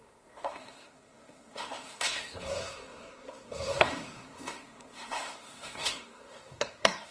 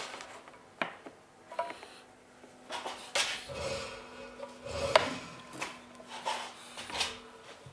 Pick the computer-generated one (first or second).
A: first